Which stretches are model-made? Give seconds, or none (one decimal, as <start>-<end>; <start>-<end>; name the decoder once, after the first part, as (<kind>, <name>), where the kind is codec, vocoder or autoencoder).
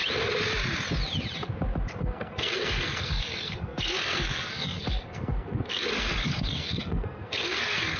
2.0-8.0 (codec, SNAC)